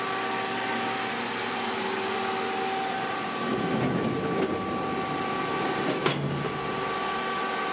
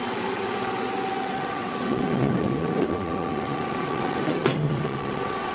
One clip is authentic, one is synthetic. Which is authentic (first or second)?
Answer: first